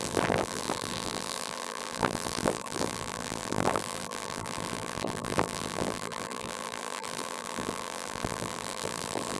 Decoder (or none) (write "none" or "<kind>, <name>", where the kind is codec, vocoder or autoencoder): vocoder, BigVGAN v2